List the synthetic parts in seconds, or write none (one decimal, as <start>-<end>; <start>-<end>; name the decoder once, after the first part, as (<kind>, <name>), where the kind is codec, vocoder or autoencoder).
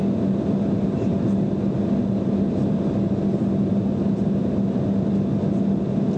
none